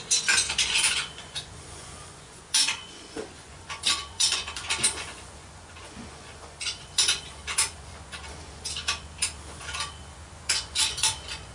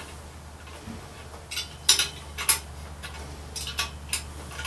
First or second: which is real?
second